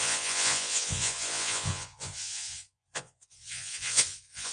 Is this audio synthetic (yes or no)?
yes